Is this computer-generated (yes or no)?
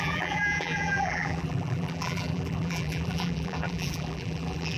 yes